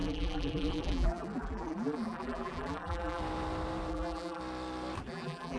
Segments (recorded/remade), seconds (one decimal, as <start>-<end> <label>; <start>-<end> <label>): 0.0-3.2 remade; 3.2-3.9 recorded; 3.9-4.4 remade; 4.4-5.1 recorded; 5.1-5.6 remade